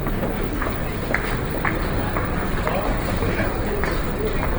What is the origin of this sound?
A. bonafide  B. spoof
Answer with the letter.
A